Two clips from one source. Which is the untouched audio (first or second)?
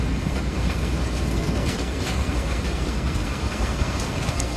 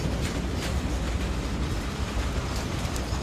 second